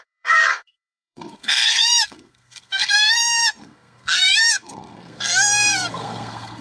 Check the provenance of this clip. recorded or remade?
remade